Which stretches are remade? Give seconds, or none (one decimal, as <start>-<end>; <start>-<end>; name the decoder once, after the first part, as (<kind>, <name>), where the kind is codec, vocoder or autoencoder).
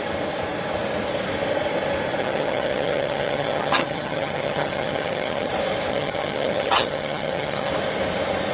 2.2-5.5 (vocoder, HiFi-GAN); 5.9-7.7